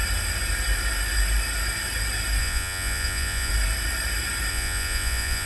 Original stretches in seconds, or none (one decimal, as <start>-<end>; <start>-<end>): 0.0-2.4; 3.5-4.5